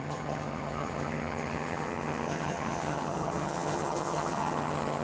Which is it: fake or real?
fake